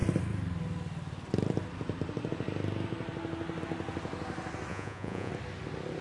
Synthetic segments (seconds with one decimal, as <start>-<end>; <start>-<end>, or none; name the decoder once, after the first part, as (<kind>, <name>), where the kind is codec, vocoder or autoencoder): 4.7-5.3 (vocoder, Vocos)